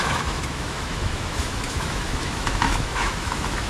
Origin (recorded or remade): remade